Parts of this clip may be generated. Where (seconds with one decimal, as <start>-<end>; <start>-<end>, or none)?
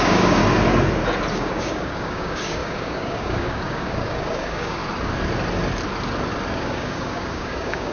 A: 0.0-0.4; 1.3-4.8; 6.5-7.9